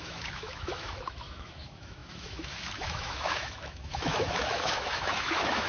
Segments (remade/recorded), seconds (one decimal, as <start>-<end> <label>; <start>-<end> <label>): 0.0-5.7 remade